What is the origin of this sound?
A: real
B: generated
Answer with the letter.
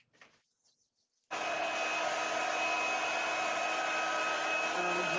A